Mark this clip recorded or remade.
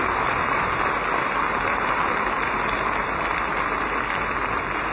recorded